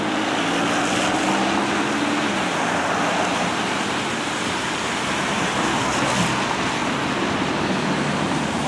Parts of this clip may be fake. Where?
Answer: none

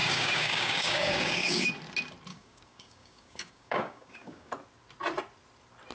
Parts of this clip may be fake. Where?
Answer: 0.0-1.7 (codec, DAC); 2.3-4.5

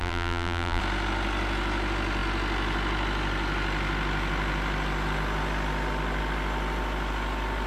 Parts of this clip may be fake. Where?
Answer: 0.0-0.8 (vocoder, BigVGAN v2)

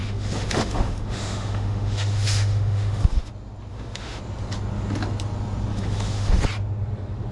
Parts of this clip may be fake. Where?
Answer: 0.0-3.3 (autoencoder, DAC-VAE); 3.7-4.2; 5.7-6.4

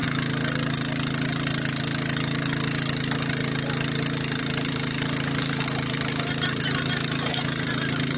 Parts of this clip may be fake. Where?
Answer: 4.4-8.2 (vocoder, BigVGAN v2)

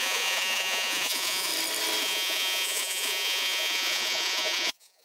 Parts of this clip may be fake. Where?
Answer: 0.0-1.5 (vocoder, Vocos); 2.0-5.0

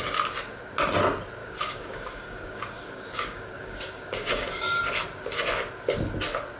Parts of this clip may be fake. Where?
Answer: 1.4-4.8 (codec, DAC)